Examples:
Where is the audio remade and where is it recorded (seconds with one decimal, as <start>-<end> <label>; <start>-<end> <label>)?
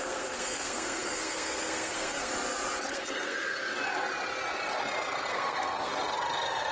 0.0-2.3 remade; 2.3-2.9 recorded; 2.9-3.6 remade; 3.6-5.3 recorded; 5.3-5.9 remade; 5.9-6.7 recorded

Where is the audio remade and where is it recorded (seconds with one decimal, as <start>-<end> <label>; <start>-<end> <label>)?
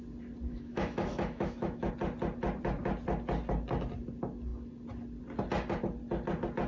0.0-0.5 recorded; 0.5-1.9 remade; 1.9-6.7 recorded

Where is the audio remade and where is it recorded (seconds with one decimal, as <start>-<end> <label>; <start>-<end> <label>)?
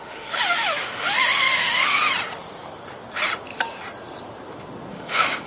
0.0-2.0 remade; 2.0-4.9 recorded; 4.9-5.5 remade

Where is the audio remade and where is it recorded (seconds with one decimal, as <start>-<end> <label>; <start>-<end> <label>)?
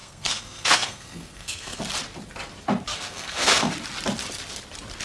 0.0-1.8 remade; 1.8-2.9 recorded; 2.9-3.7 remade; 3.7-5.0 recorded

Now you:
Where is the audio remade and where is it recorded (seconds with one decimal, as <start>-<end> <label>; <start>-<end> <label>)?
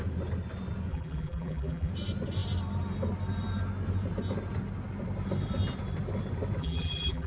0.0-0.9 recorded; 0.9-1.9 remade; 1.9-6.6 recorded; 6.6-7.3 remade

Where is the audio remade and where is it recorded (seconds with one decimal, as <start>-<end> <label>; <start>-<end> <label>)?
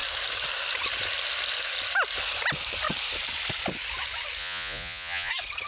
0.0-4.4 recorded; 4.4-5.3 remade; 5.3-5.7 recorded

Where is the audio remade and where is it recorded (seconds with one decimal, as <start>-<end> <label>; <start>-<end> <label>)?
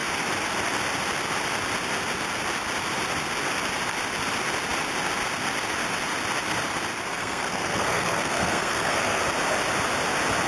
0.0-7.1 recorded; 7.1-9.2 remade; 9.2-10.5 recorded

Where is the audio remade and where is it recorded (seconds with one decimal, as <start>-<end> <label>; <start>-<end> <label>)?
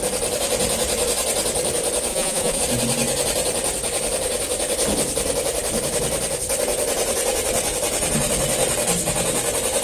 0.0-2.1 recorded; 2.1-2.6 remade; 2.6-9.8 recorded